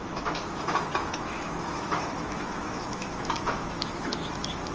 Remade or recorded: remade